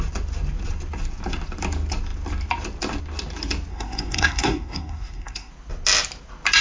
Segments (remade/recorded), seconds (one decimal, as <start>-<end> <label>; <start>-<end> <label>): 0.0-3.7 recorded; 3.7-5.5 remade; 5.5-6.6 recorded